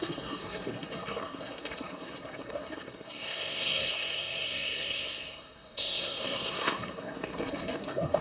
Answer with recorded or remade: remade